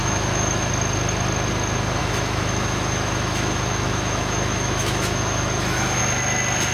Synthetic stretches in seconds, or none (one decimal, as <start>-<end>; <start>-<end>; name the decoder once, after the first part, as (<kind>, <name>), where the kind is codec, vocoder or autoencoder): 0.0-0.7 (autoencoder, DAC-VAE); 2.0-6.0